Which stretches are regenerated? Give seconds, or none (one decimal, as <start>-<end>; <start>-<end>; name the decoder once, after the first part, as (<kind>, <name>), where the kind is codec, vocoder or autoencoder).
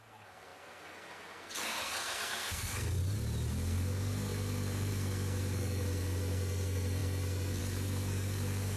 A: 0.0-3.0 (codec, SNAC); 3.5-8.8